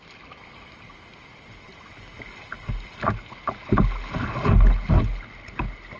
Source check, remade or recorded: recorded